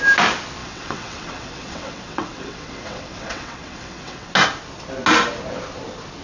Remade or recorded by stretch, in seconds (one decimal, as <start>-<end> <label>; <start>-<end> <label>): 0.0-0.6 recorded; 0.6-4.3 remade; 4.3-6.2 recorded